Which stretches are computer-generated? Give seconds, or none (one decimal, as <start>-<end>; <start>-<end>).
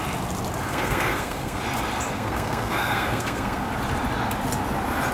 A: 0.7-1.6; 2.1-3.7